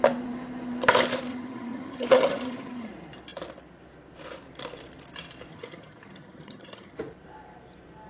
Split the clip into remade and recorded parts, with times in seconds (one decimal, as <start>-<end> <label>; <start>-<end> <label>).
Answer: 0.0-1.3 recorded; 1.3-2.9 remade; 2.9-5.5 recorded; 5.5-7.0 remade; 7.0-8.1 recorded